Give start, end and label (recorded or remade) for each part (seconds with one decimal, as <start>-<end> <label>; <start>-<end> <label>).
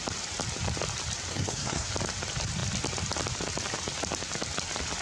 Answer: 0.0-1.3 recorded; 1.3-1.9 remade; 1.9-5.0 recorded